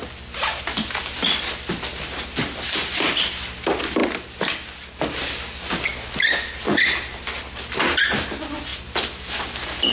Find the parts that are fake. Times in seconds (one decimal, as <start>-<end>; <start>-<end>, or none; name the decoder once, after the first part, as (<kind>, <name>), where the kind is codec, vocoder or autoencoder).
none